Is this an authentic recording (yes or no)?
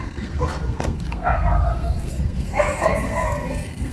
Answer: no